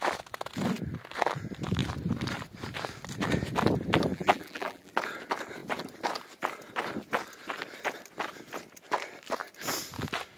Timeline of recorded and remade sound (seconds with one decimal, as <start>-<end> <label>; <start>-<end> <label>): 0.0-4.1 recorded; 4.1-4.9 remade; 4.9-10.4 recorded